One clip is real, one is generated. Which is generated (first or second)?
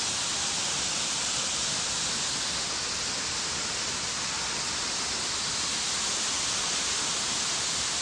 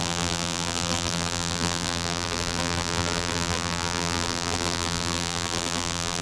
second